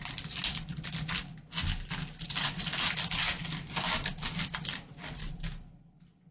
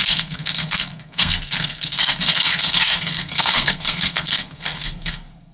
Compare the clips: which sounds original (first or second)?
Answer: first